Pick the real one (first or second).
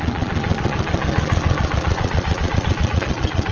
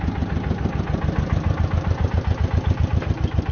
second